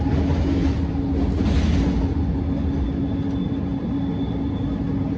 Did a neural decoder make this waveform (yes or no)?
no